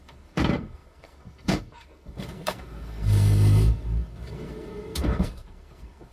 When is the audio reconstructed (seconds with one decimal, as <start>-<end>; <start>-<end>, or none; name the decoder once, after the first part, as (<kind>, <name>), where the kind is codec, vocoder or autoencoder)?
0.0-6.1 (codec, SNAC)